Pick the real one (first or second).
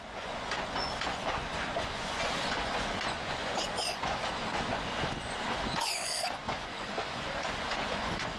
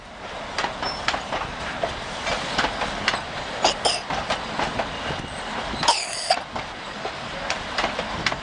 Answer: second